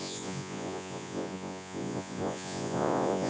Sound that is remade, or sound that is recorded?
remade